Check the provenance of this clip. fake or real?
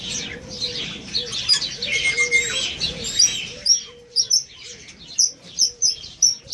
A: fake